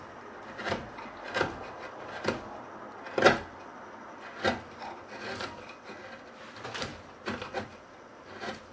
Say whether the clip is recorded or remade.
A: recorded